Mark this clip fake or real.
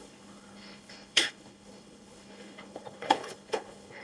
fake